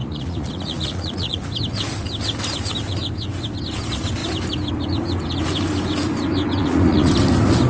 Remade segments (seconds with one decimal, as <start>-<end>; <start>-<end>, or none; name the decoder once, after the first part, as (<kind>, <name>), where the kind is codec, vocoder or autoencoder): 0.0-1.4 (vocoder, Vocos); 6.6-7.1